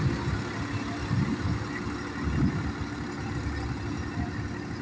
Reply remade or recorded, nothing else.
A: recorded